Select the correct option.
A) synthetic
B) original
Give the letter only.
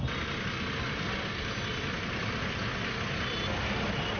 B